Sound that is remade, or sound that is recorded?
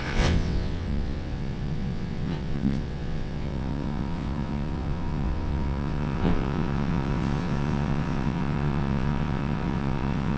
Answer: remade